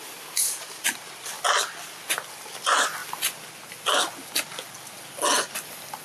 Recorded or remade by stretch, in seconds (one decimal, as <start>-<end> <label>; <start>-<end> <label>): 0.0-6.0 recorded